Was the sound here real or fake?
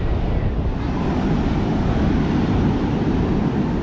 real